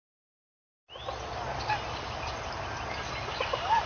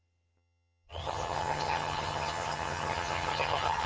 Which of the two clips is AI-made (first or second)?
second